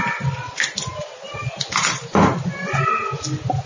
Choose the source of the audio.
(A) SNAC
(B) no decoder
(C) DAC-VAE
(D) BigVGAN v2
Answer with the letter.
B